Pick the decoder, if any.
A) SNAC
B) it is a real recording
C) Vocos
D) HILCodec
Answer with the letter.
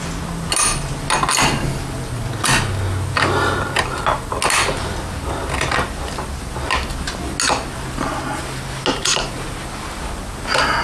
B